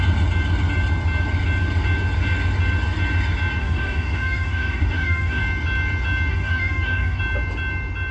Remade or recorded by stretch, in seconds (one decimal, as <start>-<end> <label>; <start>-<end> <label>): 0.0-3.6 recorded; 3.6-5.4 remade; 5.4-6.3 recorded; 6.3-7.2 remade; 7.2-8.1 recorded